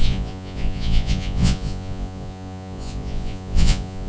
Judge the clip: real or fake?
fake